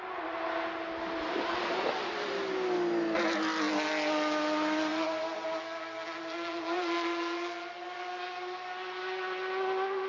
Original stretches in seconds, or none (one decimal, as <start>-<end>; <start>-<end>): 0.0-10.1